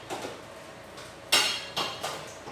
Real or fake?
real